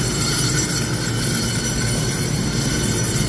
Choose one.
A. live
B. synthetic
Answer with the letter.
A